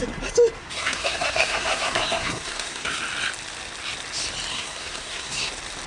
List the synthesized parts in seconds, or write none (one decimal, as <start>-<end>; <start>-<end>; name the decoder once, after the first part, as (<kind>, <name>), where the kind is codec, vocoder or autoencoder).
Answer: 0.6-3.0 (codec, SNAC); 4.5-5.5